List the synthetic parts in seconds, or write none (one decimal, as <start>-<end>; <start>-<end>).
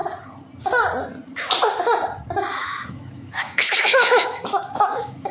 2.6-5.3